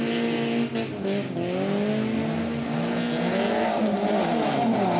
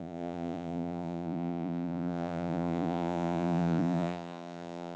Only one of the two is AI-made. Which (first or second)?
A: second